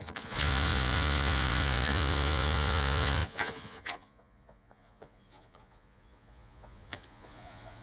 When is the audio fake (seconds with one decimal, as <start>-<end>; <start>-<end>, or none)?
0.0-7.8